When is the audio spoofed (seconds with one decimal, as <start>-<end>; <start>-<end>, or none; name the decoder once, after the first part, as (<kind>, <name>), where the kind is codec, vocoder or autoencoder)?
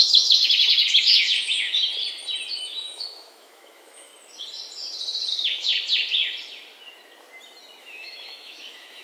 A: 0.0-1.8 (autoencoder, DAC-VAE); 2.6-4.1; 5.3-5.7; 7.8-9.0